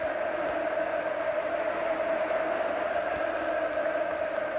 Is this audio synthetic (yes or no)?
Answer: no